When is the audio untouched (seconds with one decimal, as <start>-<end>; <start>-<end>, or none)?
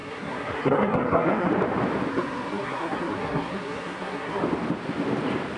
1.5-2.1; 4.4-5.6